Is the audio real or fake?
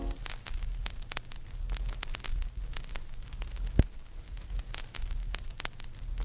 real